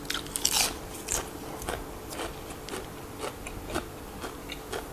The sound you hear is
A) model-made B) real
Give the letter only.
B